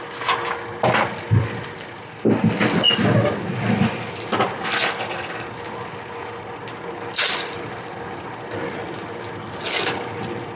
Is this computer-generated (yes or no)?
no